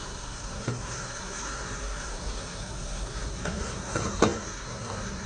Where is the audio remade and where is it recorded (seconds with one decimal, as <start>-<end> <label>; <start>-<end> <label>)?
0.0-5.3 remade